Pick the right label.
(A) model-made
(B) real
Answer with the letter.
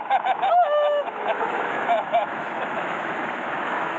A